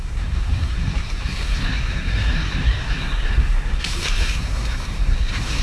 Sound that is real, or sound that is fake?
fake